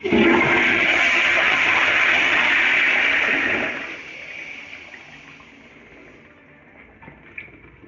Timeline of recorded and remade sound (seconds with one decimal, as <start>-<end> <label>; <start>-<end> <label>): 0.0-0.7 recorded; 0.7-2.5 remade; 2.5-7.9 recorded